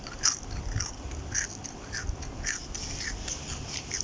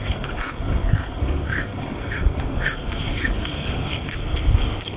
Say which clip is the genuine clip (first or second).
first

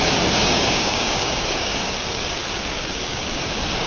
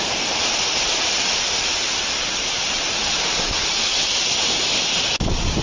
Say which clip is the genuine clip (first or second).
second